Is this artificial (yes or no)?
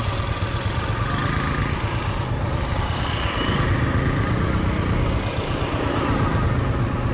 no